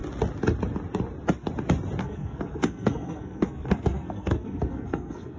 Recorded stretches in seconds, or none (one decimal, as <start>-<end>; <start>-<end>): 0.0-2.0